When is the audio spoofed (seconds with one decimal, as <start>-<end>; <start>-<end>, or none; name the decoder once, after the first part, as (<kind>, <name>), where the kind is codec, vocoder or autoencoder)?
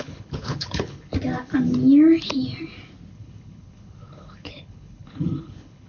0.0-1.1 (codec, HILCodec); 3.1-5.9